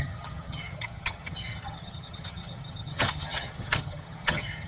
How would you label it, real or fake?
fake